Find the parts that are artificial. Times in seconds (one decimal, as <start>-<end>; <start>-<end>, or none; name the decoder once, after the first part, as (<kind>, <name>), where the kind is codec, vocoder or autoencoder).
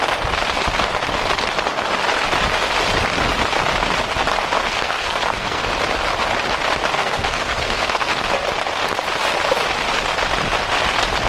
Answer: 4.6-5.7 (codec, SNAC); 7.0-8.3